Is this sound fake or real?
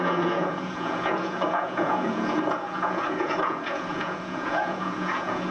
fake